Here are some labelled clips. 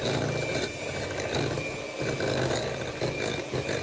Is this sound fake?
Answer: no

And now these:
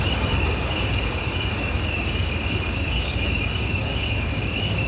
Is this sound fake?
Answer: yes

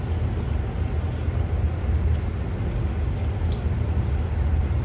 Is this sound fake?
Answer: no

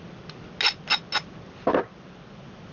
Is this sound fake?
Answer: no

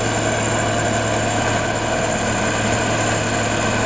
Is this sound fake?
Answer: no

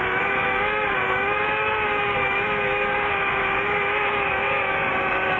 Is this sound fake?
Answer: yes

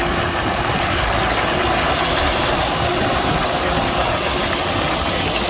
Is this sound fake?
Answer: no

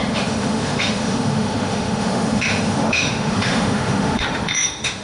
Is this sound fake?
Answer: yes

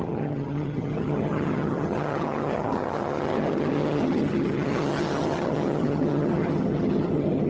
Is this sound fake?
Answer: yes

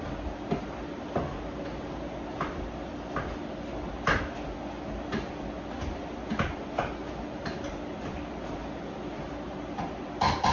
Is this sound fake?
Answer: no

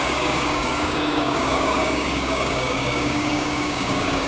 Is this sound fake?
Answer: yes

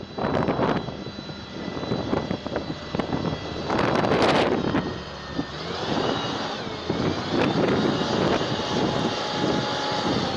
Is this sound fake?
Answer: no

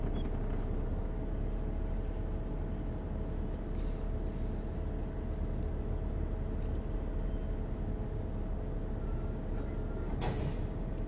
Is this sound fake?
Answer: no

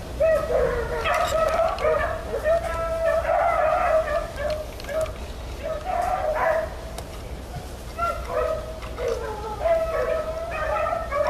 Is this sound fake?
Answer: no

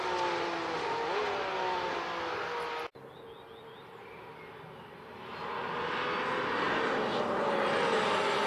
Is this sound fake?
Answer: no